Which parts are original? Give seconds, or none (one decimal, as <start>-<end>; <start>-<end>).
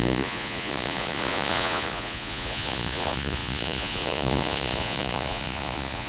none